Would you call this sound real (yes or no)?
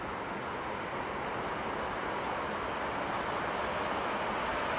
yes